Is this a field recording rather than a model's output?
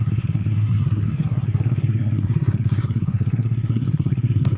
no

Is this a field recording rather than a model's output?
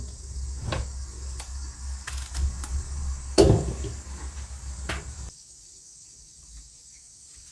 no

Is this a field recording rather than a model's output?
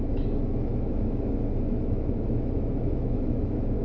no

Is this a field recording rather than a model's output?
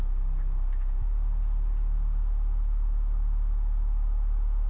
yes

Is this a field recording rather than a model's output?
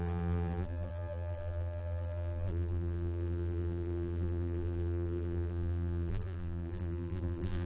no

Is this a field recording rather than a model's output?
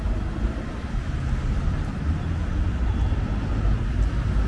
yes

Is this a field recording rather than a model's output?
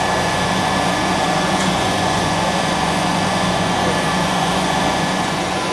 no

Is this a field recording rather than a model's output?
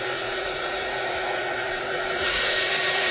no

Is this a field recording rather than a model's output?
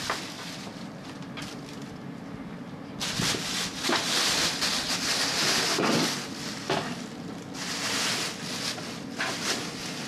yes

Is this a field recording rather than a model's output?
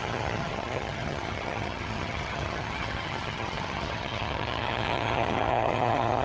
no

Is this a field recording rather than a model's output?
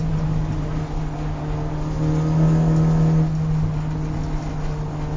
yes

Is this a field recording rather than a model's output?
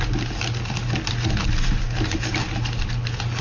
yes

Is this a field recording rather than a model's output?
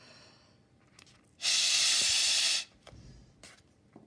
yes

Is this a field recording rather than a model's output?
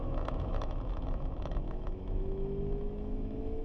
no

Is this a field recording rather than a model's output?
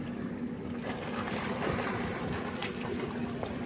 yes